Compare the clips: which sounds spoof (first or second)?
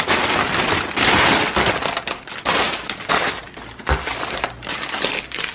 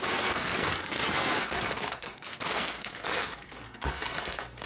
second